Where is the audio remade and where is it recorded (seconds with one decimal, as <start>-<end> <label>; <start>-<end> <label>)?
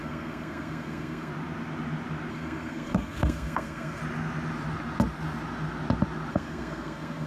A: 0.0-1.3 remade; 1.3-2.3 recorded; 2.3-4.0 remade; 4.0-6.3 recorded; 6.3-7.3 remade